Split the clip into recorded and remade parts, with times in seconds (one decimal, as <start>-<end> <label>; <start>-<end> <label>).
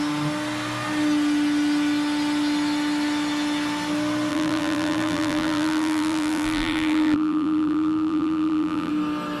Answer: 0.0-4.3 recorded; 4.3-8.9 remade; 8.9-9.4 recorded